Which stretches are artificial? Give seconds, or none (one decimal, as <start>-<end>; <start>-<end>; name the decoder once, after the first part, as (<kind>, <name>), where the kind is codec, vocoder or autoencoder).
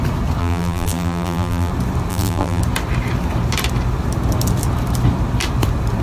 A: 0.4-1.7 (vocoder, BigVGAN v2); 2.1-2.6